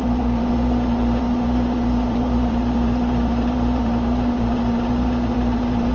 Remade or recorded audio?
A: remade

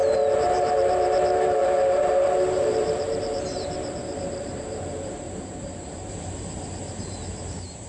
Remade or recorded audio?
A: remade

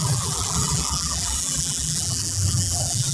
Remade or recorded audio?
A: remade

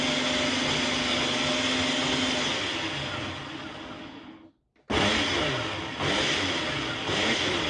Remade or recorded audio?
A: recorded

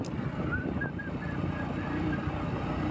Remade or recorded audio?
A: remade